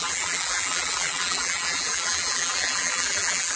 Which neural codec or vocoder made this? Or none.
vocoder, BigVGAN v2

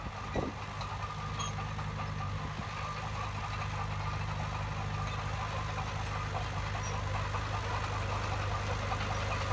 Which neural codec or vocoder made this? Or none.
none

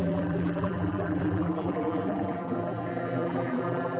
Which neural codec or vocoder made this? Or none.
vocoder, BigVGAN v2